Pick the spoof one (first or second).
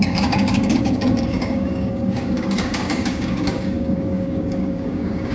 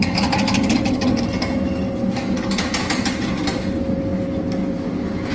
first